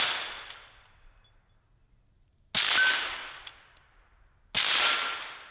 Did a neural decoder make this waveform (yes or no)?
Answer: no